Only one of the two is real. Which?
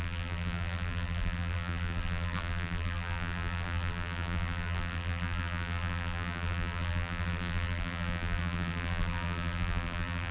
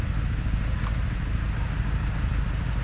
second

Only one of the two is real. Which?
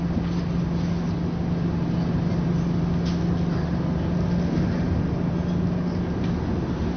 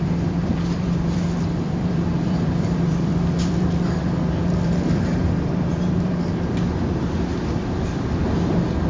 first